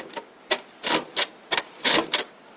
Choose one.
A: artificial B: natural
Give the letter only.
B